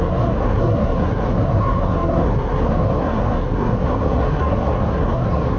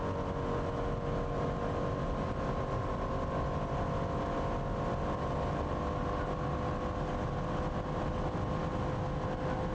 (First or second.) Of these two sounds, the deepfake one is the first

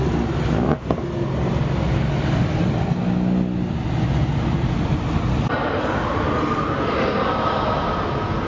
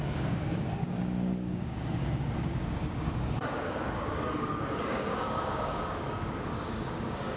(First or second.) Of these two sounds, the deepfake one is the second